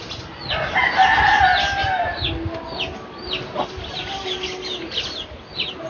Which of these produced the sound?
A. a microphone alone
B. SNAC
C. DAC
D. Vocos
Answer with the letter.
A